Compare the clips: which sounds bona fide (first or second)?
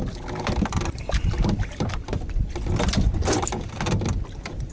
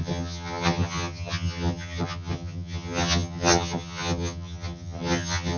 first